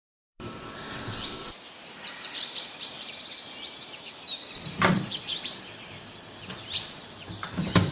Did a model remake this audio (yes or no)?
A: yes